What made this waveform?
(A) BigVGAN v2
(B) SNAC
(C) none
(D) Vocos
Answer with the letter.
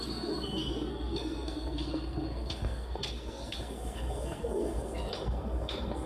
B